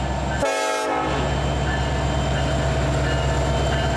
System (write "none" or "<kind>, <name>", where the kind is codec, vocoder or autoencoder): none